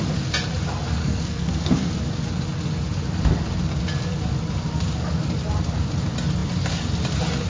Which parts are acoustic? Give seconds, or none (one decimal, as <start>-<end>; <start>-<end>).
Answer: 0.0-1.0; 1.9-7.5